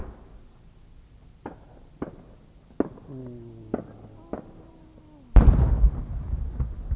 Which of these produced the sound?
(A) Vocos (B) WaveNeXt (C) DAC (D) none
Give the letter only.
D